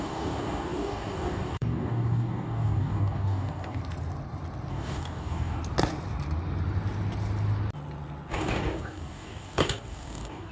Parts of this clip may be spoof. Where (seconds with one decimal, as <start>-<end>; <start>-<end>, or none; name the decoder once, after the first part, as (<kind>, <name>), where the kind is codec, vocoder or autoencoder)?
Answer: 0.0-3.8 (codec, DAC); 4.7-5.6; 8.3-10.5

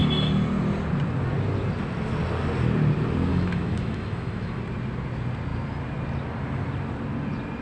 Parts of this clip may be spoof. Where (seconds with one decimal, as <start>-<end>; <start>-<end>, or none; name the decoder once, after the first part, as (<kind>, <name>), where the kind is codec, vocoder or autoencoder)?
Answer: 3.3-4.6 (autoencoder, DAC-VAE)